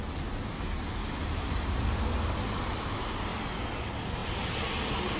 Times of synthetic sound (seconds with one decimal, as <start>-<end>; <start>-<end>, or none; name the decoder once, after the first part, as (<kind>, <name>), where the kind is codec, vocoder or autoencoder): 1.0-2.0 (vocoder, BigVGAN v2)